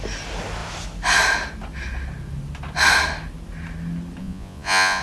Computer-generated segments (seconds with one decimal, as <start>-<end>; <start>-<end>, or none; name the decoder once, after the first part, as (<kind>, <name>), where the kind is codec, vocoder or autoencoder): 4.2-5.0 (vocoder, Vocos)